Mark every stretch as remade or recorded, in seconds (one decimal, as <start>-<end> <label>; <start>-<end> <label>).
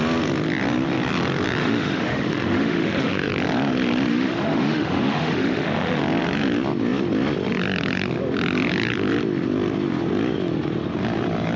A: 0.0-1.6 recorded; 1.6-3.3 remade; 3.3-4.1 recorded; 4.1-6.0 remade; 6.0-11.6 recorded